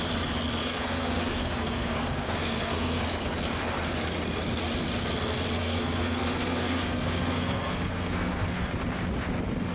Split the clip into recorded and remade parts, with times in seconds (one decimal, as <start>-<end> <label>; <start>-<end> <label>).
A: 0.0-0.6 recorded; 0.6-3.0 remade; 3.0-5.6 recorded; 5.6-8.7 remade; 8.7-9.7 recorded